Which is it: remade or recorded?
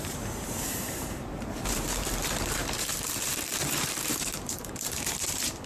remade